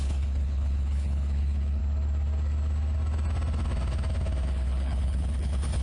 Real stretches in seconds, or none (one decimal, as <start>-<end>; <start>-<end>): 1.8-4.5